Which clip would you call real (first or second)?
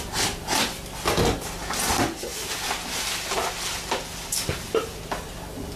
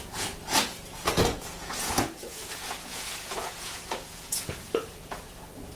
first